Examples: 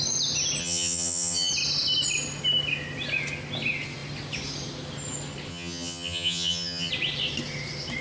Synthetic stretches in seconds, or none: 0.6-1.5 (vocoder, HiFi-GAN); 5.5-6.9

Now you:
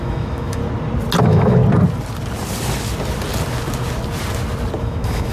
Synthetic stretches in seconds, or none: 0.0-0.6 (autoencoder, DAC-VAE); 1.2-1.6; 4.8-5.3

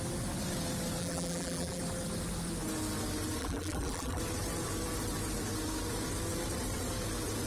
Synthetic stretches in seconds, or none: 1.0-1.8 (vocoder, BigVGAN v2); 3.4-4.2

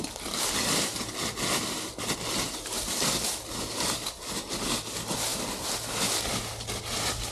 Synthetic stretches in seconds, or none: none